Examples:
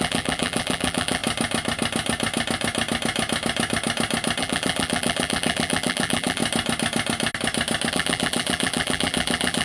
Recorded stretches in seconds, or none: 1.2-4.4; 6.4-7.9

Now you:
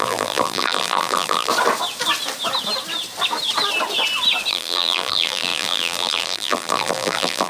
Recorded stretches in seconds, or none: 1.5-4.5

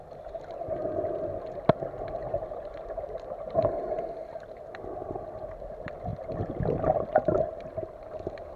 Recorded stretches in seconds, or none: 0.0-2.2; 4.2-8.6

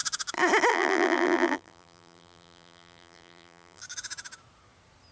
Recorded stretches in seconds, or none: 0.0-0.7; 3.8-5.1

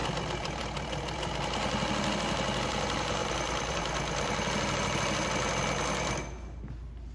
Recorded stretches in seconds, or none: 1.4-3.2; 3.8-7.1

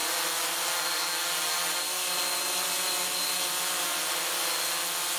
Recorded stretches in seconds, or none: 0.0-5.2

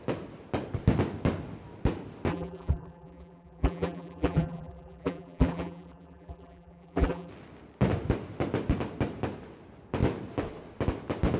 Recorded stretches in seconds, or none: 0.0-2.3; 7.3-11.4

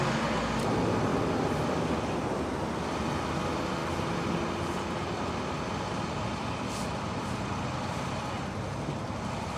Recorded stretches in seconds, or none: 0.0-9.6